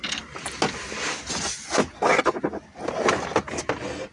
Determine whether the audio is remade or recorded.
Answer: recorded